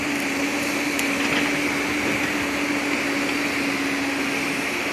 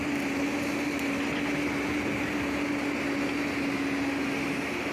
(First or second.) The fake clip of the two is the first